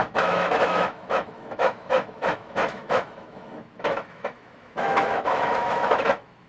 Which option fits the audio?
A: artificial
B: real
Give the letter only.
A